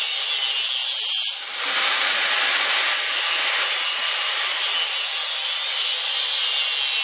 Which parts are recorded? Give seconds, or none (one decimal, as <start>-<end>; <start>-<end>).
0.0-7.0